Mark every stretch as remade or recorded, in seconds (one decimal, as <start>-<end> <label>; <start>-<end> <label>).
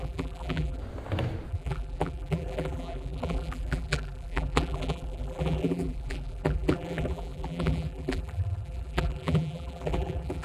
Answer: 0.0-0.8 remade; 0.8-1.5 recorded; 1.5-10.4 remade